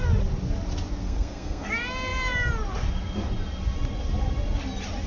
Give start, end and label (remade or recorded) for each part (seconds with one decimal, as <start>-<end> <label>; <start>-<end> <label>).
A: 0.0-1.0 recorded; 1.0-1.7 remade; 1.7-5.1 recorded